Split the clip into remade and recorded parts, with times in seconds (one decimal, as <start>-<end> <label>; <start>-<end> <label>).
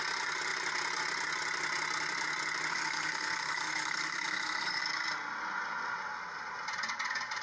0.0-2.7 recorded; 2.7-4.8 remade; 4.8-7.4 recorded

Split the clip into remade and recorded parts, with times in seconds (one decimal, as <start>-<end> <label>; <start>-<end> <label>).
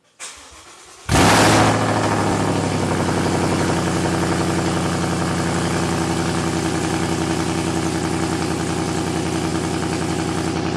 0.0-10.8 recorded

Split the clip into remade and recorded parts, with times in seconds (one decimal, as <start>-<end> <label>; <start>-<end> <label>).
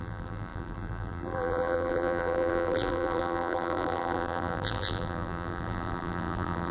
0.0-6.7 remade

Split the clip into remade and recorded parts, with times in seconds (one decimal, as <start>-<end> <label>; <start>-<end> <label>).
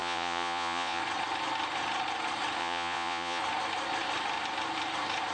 0.0-1.0 remade; 1.0-2.6 recorded; 2.6-3.4 remade; 3.4-5.3 recorded